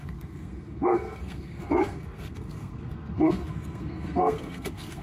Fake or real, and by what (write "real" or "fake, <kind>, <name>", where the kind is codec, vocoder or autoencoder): fake, codec, SNAC